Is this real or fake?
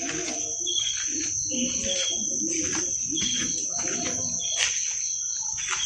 real